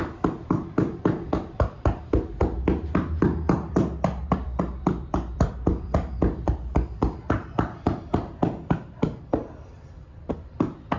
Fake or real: fake